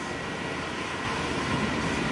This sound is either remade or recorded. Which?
recorded